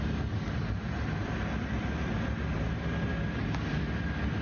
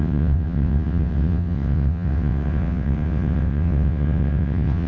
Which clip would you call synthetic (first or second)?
second